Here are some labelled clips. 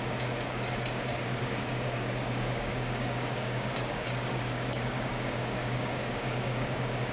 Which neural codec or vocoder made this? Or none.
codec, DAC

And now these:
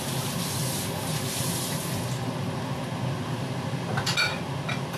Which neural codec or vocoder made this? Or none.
none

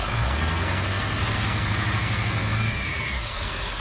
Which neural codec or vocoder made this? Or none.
codec, SNAC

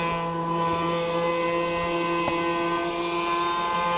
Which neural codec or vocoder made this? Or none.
none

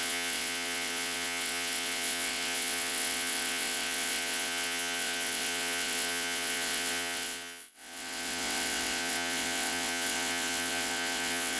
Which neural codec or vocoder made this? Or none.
vocoder, WaveNeXt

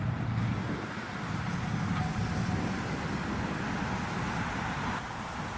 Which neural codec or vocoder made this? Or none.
none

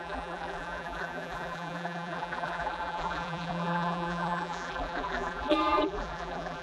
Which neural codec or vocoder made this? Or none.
vocoder, BigVGAN v2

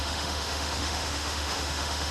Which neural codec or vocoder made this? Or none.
autoencoder, DAC-VAE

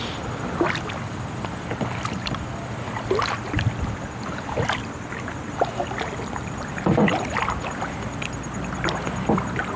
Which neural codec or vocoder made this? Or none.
none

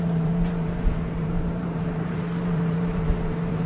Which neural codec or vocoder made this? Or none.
vocoder, BigVGAN v2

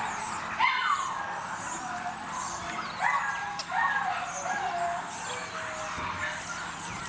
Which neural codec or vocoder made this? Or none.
none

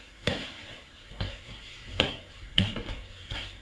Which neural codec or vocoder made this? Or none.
codec, SNAC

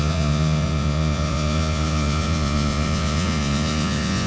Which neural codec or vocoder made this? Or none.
vocoder, Vocos